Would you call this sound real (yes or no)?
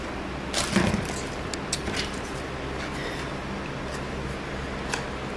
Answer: yes